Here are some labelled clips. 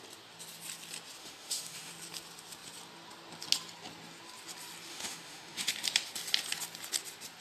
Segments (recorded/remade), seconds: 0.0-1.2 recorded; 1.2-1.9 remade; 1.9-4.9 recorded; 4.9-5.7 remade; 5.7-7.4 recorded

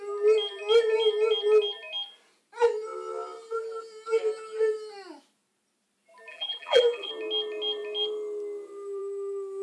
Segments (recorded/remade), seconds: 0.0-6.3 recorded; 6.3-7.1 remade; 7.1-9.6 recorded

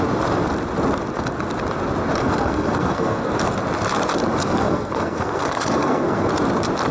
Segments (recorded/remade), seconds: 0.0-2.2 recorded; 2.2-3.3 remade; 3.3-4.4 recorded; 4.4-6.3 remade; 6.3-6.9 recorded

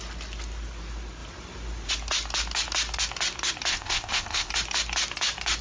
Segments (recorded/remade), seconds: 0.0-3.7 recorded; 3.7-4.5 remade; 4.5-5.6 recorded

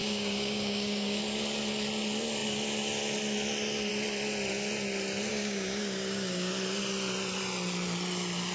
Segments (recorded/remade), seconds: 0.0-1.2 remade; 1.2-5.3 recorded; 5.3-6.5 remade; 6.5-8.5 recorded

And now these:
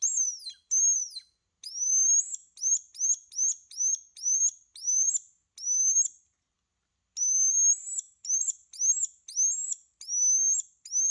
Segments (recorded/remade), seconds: 0.0-11.1 recorded